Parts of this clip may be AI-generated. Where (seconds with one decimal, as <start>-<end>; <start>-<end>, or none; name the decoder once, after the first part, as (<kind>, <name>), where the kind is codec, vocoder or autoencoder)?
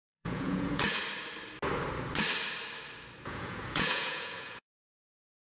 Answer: 0.0-1.0 (vocoder, Vocos); 3.2-5.5